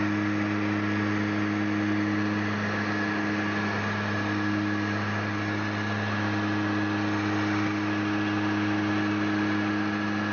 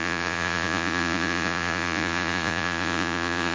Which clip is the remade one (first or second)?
second